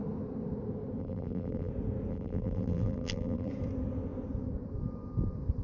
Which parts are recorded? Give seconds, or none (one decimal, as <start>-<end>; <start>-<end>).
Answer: 0.0-1.0; 1.7-2.1; 3.5-5.6